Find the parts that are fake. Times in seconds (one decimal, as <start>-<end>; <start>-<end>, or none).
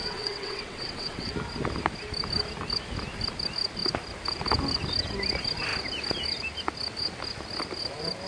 0.0-1.3